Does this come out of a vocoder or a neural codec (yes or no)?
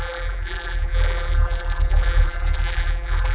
yes